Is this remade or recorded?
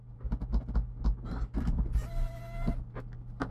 recorded